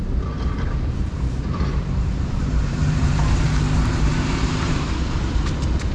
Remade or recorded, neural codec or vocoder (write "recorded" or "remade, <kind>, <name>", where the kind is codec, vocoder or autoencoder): remade, vocoder, BigVGAN v2